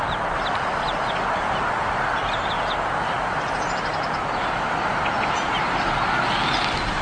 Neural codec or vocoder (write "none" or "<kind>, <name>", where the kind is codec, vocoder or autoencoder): none